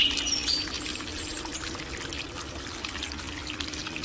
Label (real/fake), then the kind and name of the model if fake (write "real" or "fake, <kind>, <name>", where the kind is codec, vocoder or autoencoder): real